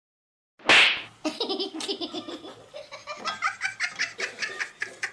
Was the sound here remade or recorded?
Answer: recorded